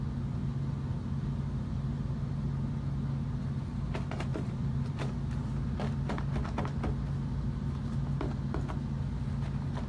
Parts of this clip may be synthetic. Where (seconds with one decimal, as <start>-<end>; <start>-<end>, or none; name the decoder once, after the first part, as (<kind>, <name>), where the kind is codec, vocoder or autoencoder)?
4.3-4.9 (vocoder, BigVGAN v2)